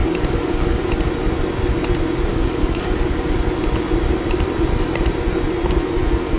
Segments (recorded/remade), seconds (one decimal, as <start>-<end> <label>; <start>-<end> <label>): 0.0-0.8 remade; 0.8-2.3 recorded; 2.3-3.1 remade; 3.1-6.4 recorded